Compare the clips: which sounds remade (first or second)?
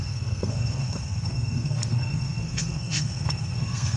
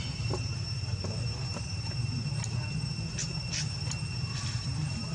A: first